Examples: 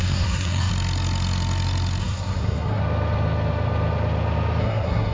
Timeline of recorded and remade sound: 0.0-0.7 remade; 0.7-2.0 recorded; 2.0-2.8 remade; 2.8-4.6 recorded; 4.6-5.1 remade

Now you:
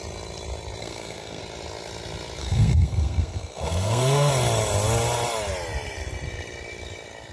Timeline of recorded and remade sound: 0.0-0.8 recorded; 0.8-1.4 remade; 1.4-2.4 recorded; 2.4-4.3 remade; 4.3-7.3 recorded

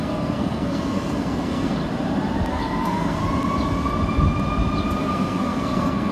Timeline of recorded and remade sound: 0.0-1.8 remade; 1.8-2.5 recorded; 2.5-3.2 remade; 3.2-5.0 recorded; 5.0-6.1 remade

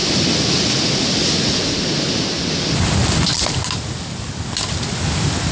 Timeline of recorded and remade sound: 0.0-5.5 recorded

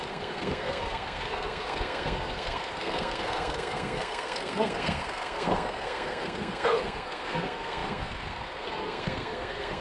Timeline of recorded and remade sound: 0.0-9.8 remade

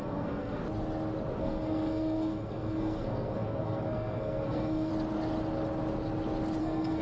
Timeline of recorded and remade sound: 0.0-0.6 remade; 0.6-1.4 recorded; 1.4-4.9 remade; 4.9-6.6 recorded; 6.6-7.0 remade